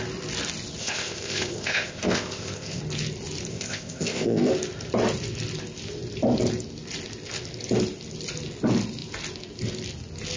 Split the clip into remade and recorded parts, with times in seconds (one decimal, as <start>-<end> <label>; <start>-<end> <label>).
0.0-0.8 recorded; 0.8-2.8 remade; 2.8-3.5 recorded; 3.5-4.5 remade; 4.5-10.4 recorded